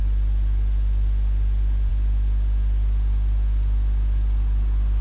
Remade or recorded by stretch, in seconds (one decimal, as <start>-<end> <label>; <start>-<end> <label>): 0.0-5.0 recorded